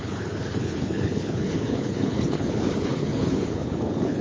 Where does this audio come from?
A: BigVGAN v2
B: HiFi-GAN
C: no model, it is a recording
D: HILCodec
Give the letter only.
D